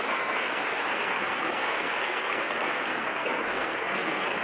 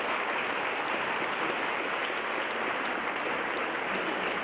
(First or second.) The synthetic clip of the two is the first